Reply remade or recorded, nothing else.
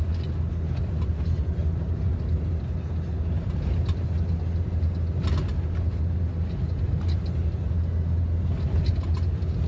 recorded